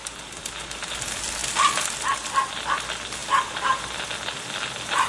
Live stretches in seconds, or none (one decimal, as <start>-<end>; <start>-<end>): 0.0-5.1